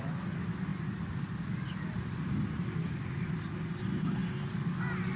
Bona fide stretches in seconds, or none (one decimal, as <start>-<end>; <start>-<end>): 0.0-0.7; 3.8-5.2